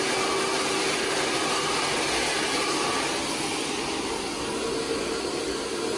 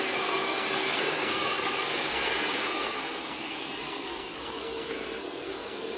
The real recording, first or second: first